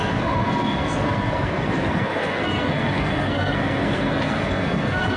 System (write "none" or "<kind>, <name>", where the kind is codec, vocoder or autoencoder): codec, SNAC